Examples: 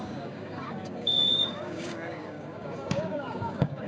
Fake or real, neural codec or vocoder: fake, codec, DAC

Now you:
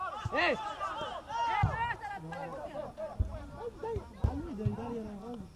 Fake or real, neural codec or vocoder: real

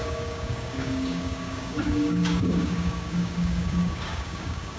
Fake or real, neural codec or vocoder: fake, codec, DAC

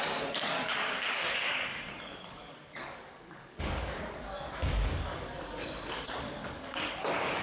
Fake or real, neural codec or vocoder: fake, codec, DAC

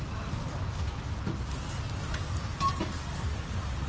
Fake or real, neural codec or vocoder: real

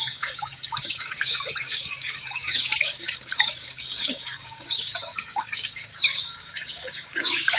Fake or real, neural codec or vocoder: fake, codec, DAC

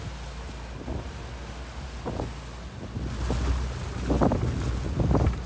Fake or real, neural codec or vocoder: real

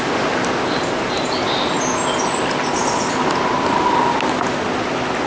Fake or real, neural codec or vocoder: real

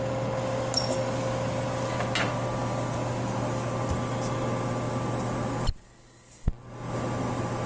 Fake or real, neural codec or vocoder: real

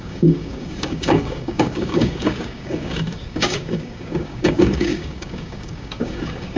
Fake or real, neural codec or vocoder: fake, codec, DAC